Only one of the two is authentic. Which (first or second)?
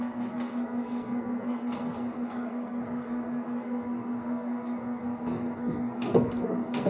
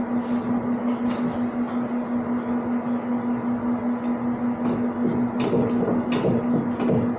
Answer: second